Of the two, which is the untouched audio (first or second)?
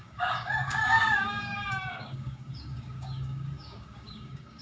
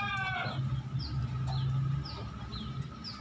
second